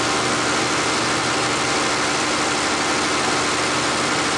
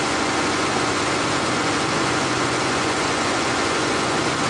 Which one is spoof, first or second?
second